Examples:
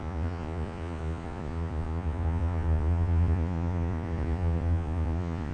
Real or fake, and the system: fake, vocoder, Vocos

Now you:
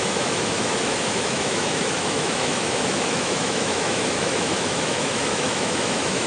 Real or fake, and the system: fake, autoencoder, DAC-VAE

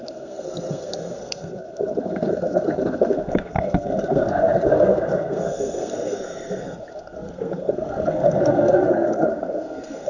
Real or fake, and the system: fake, codec, SNAC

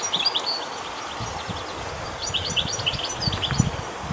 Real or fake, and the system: real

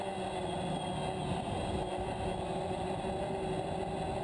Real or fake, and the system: real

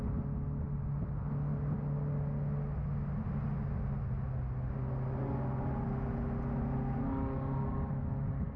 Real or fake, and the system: real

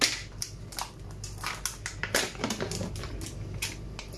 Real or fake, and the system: real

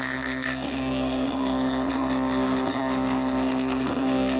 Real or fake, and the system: fake, codec, SNAC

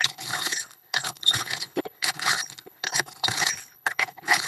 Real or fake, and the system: fake, codec, HILCodec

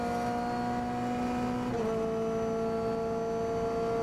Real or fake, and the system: real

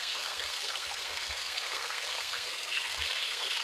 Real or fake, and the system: fake, codec, SNAC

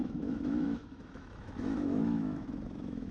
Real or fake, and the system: fake, autoencoder, DAC-VAE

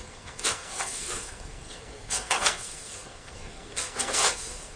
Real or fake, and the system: fake, codec, SNAC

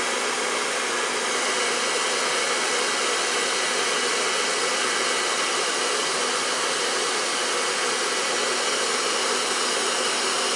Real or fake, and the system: real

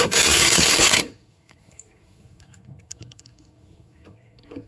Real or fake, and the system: fake, codec, SNAC